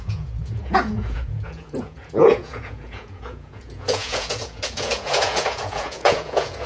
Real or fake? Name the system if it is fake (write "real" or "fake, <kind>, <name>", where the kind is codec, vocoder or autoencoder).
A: fake, vocoder, Vocos